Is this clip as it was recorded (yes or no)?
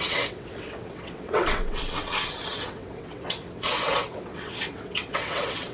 no